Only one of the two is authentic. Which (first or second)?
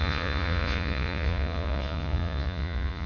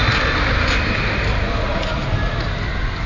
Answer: second